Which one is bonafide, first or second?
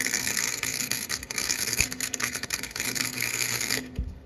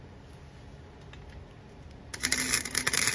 second